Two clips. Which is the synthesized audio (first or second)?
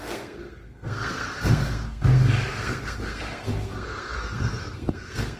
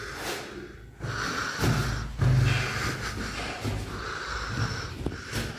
first